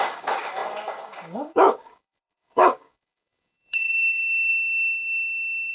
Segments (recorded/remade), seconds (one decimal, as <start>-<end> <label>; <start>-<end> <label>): 0.0-4.5 remade; 4.5-5.7 recorded